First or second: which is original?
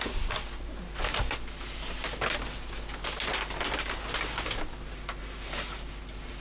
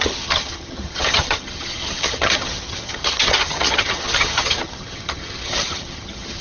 first